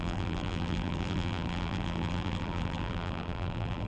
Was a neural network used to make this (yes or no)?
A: yes